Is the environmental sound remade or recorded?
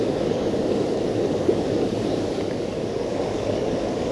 remade